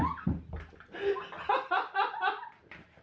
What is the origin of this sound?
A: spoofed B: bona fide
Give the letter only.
B